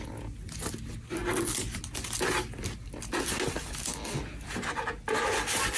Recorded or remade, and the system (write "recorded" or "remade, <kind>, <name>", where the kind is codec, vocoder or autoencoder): recorded